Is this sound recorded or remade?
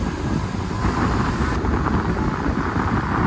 recorded